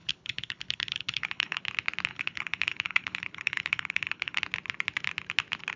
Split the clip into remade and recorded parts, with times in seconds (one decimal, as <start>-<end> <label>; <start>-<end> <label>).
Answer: 0.0-1.6 remade; 1.6-2.1 recorded; 2.1-4.4 remade; 4.4-5.8 recorded